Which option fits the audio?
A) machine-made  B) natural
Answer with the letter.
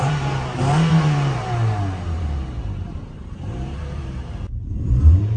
A